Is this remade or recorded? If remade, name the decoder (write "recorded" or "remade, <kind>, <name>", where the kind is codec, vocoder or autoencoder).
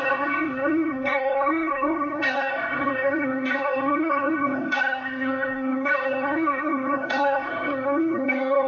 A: remade, codec, SNAC